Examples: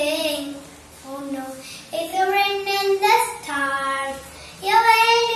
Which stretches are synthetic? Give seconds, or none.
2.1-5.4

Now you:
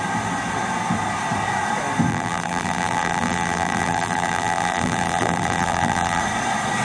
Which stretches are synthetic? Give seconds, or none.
2.1-6.2

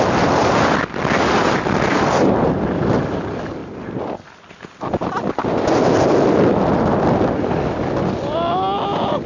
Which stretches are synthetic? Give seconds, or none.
none

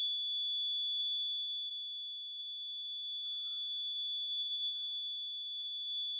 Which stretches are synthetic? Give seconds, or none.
1.0-1.7; 2.4-6.2

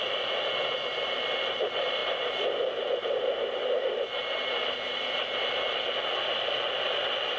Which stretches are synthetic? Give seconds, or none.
none

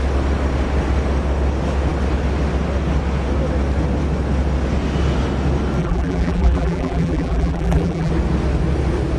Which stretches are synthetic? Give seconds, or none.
5.8-8.1